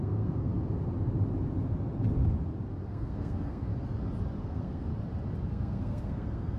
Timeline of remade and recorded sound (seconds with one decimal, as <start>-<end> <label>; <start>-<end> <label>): 0.0-0.5 remade; 0.5-2.9 recorded; 2.9-3.7 remade; 3.7-4.4 recorded; 4.4-4.9 remade; 4.9-5.5 recorded; 5.5-6.6 remade